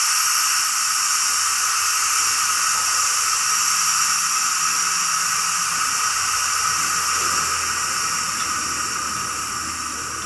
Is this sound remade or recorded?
recorded